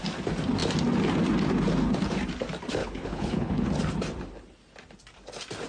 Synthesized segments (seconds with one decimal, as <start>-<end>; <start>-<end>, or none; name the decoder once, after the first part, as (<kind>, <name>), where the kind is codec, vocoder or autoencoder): 2.8-3.7 (codec, HILCodec)

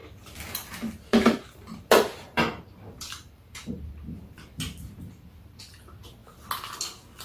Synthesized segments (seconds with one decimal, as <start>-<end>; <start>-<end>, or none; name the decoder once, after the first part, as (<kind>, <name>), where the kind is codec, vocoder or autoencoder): 1.1-3.8 (vocoder, BigVGAN v2)

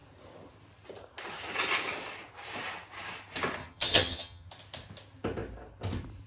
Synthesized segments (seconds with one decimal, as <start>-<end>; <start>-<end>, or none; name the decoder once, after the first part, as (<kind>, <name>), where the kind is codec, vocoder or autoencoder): 3.6-4.5 (vocoder, HiFi-GAN)

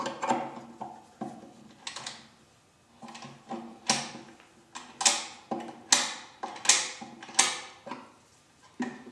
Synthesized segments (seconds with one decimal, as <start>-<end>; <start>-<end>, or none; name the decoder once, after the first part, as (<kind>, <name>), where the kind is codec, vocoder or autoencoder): none

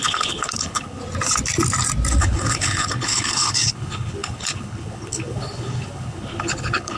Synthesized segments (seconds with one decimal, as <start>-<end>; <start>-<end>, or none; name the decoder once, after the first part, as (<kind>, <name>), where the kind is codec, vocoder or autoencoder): 0.0-1.0 (codec, HILCodec); 2.2-7.0

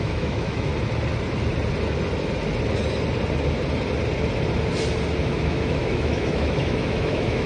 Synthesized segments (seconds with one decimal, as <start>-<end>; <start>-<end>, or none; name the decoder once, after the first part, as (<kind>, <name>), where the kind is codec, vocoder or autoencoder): 0.0-0.7 (autoencoder, DAC-VAE); 5.2-7.5